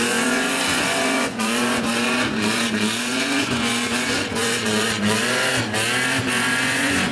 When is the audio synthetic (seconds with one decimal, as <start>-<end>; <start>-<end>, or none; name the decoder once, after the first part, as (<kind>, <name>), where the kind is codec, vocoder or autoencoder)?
0.0-5.5 (vocoder, Vocos); 6.3-7.1